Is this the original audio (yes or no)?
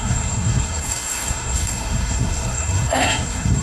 no